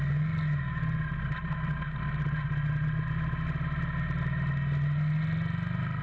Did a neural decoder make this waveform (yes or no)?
no